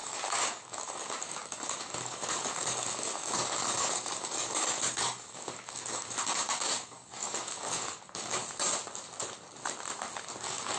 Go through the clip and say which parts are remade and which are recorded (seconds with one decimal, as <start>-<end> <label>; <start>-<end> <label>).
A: 0.0-8.4 remade; 8.4-10.4 recorded; 10.4-10.8 remade